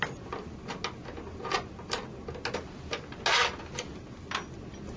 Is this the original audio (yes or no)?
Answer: yes